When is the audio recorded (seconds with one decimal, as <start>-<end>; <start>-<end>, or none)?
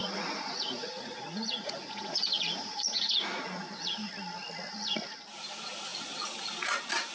4.1-7.1